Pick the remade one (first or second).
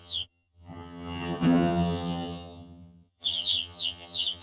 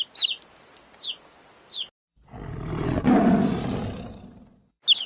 first